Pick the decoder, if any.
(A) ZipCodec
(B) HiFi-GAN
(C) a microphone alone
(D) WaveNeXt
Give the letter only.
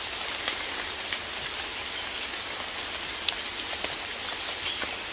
C